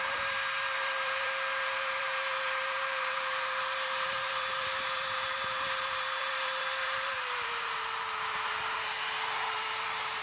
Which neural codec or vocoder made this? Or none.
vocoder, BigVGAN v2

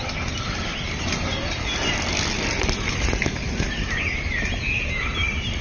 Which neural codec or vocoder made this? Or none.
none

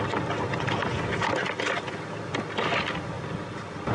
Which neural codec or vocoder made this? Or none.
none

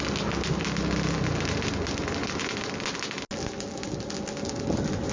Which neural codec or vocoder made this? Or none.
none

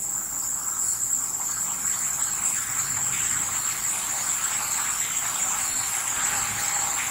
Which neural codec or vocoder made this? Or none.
none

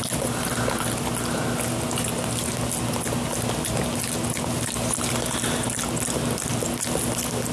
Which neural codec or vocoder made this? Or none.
none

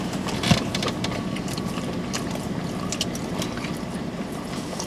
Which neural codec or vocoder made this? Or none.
none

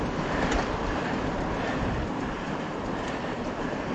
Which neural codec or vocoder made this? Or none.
vocoder, BigVGAN v2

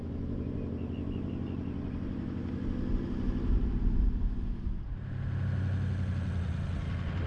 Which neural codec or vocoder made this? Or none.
none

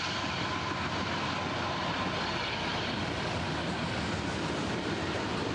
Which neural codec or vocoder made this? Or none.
none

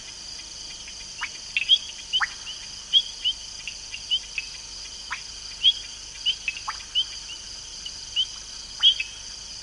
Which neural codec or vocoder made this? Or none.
none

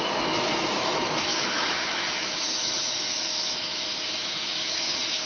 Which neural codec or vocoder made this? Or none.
autoencoder, DAC-VAE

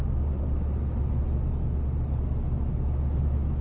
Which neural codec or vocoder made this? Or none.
none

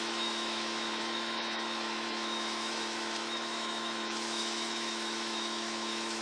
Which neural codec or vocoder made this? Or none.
autoencoder, DAC-VAE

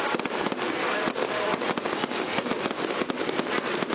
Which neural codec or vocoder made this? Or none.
none